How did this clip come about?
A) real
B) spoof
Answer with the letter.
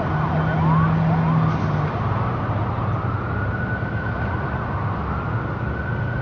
A